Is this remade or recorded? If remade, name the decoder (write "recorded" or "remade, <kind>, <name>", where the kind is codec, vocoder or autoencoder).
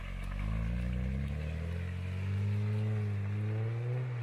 recorded